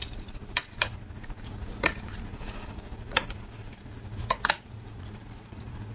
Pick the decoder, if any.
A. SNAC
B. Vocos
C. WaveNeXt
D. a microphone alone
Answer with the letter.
B